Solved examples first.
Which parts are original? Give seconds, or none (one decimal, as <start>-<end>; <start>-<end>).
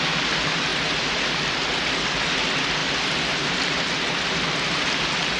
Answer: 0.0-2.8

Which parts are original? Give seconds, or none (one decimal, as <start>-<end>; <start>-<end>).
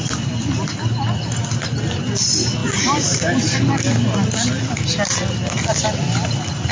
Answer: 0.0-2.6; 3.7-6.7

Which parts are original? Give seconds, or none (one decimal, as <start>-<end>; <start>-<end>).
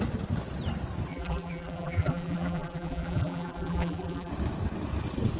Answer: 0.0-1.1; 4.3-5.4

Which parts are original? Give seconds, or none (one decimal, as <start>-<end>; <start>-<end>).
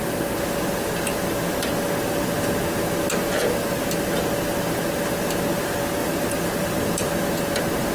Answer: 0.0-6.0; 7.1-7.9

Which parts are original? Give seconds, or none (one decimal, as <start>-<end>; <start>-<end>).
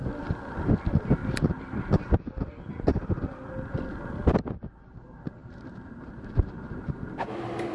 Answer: 0.0-5.4; 7.1-7.7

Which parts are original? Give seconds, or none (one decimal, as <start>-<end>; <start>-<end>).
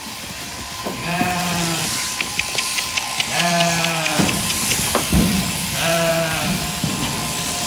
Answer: none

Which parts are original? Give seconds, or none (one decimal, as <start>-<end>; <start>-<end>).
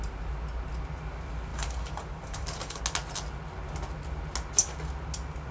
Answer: 0.0-1.5; 2.8-5.5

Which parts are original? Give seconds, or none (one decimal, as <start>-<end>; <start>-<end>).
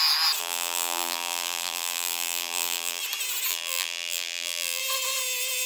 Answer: 0.0-0.4; 3.0-3.5; 4.8-5.7